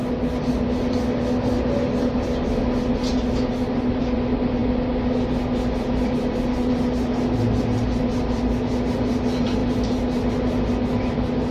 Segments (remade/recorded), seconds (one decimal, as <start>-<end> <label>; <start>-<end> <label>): 0.0-11.5 recorded